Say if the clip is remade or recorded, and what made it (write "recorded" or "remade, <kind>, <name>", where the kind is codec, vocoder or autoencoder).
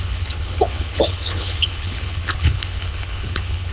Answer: remade, codec, HILCodec